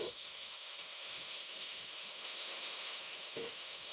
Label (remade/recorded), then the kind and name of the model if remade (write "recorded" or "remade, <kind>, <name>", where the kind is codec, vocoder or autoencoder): remade, autoencoder, DAC-VAE